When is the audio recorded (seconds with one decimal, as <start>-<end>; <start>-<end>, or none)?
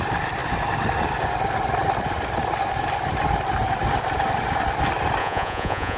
0.0-5.2